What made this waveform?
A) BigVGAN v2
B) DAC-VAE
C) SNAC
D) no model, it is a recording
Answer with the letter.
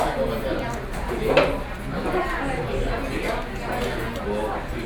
D